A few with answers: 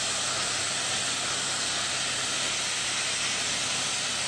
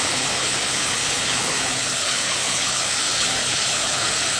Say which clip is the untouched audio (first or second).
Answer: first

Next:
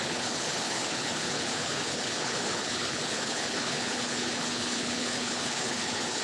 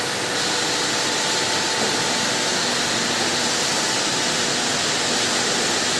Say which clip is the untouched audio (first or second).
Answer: second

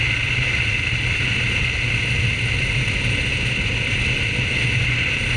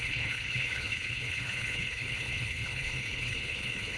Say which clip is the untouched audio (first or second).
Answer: first